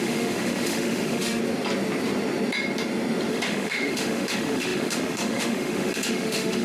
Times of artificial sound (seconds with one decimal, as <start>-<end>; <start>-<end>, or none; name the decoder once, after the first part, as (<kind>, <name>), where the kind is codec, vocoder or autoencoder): 0.0-1.4 (autoencoder, DAC-VAE); 3.3-6.6